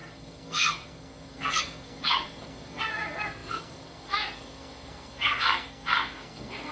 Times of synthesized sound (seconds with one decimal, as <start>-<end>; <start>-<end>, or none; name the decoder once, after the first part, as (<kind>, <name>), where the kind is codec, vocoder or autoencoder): 0.0-6.7 (codec, SNAC)